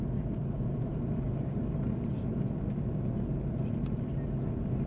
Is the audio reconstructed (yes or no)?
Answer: no